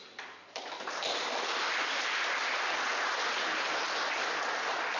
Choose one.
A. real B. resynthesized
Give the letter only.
A